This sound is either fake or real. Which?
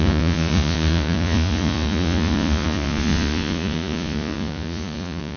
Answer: fake